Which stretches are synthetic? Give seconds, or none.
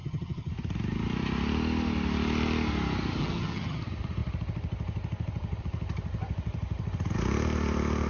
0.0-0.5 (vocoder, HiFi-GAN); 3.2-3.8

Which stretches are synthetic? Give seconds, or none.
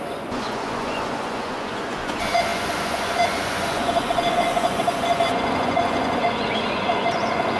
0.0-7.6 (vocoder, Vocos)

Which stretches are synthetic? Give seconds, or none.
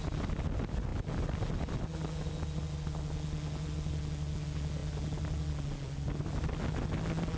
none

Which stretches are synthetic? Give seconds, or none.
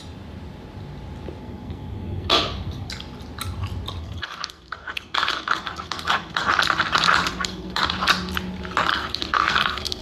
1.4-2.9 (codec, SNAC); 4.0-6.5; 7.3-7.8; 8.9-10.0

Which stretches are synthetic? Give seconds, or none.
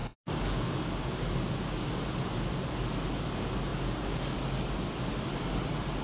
0.0-2.0 (codec, DAC)